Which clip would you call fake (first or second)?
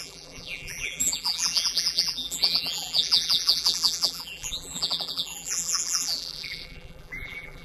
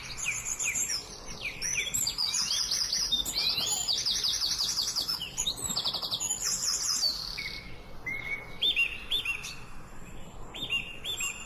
first